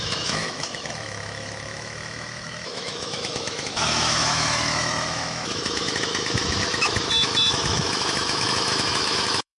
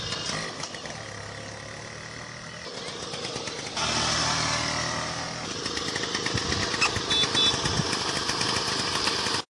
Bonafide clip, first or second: second